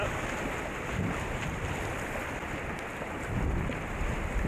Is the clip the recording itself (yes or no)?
yes